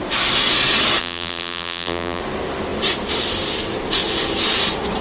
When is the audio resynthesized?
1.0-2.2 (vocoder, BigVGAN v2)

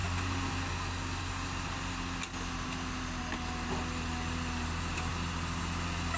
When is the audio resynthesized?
none

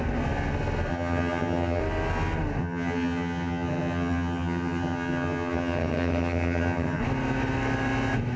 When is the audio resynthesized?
0.9-1.8 (vocoder, HiFi-GAN); 2.6-7.0

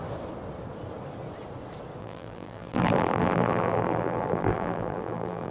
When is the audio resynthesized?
2.0-5.5 (vocoder, BigVGAN v2)

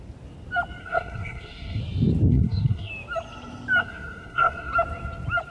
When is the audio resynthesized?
0.8-1.8 (codec, SNAC); 2.3-2.9; 3.8-4.7

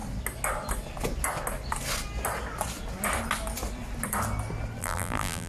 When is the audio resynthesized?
4.8-5.5 (vocoder, BigVGAN v2)